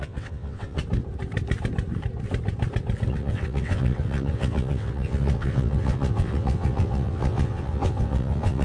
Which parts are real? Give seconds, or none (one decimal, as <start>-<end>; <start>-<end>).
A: 0.8-3.1